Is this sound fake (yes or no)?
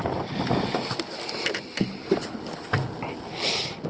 no